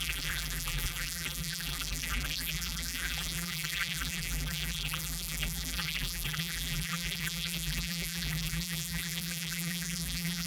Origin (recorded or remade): remade